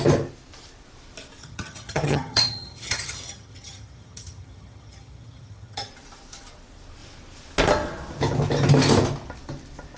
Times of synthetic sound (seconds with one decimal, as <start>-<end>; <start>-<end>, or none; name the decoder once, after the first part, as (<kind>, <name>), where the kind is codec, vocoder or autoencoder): 1.4-5.9 (vocoder, HiFi-GAN)